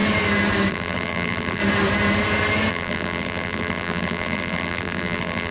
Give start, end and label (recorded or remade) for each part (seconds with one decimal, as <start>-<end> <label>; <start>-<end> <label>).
0.0-0.7 recorded; 0.7-1.6 remade; 1.6-2.7 recorded; 2.7-5.5 remade